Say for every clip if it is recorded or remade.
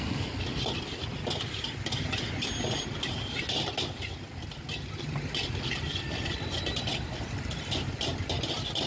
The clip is recorded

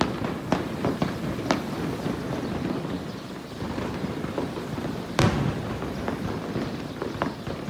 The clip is recorded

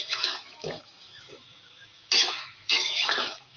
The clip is remade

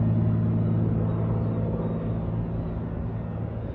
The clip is recorded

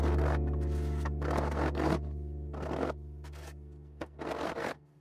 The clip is remade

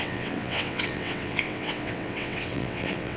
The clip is remade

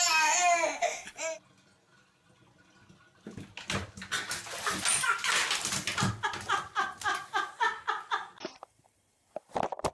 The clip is recorded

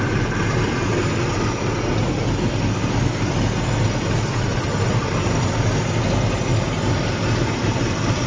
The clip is recorded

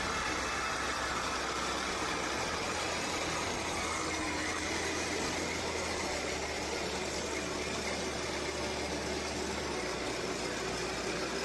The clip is recorded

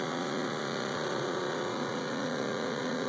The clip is remade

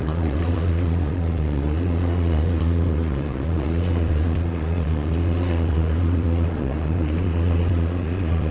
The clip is remade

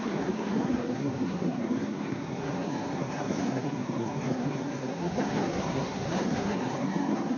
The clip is remade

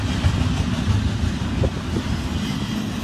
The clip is recorded